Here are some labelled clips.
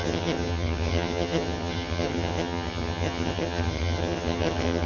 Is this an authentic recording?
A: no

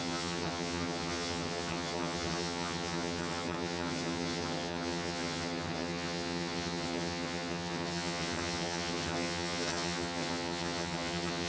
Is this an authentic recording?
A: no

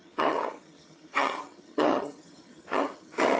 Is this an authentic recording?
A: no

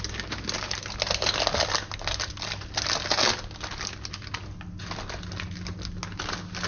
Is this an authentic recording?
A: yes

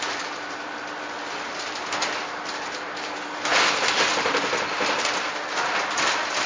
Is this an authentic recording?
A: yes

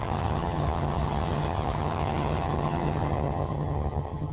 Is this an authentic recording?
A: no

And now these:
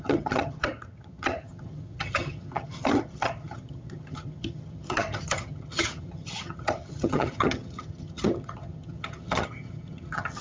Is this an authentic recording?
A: no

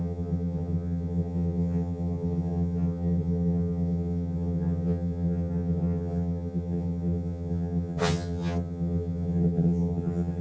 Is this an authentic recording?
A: no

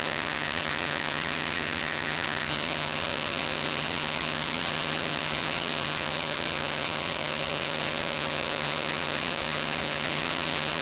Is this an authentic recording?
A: no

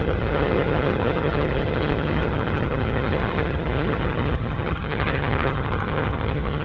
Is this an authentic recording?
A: no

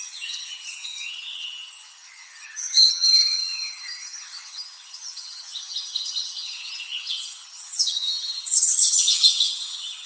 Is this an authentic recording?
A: no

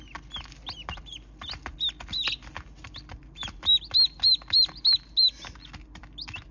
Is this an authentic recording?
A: yes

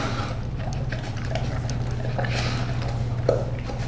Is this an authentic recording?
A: yes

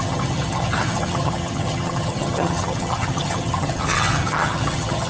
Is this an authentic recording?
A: no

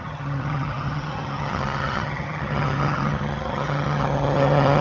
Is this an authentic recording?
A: no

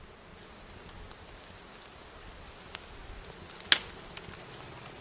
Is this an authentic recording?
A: yes